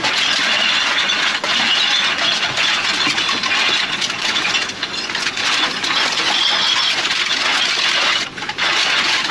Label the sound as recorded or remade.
remade